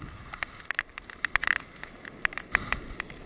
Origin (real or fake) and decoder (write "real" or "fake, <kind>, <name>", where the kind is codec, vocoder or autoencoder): real